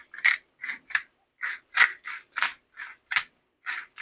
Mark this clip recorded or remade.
recorded